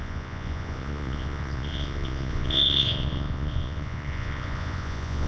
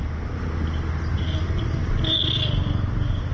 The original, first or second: second